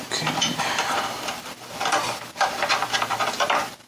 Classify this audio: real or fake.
fake